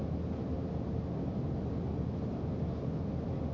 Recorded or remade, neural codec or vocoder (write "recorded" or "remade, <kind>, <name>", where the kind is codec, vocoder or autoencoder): recorded